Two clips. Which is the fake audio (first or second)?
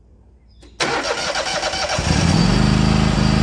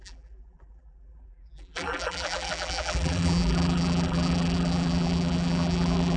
second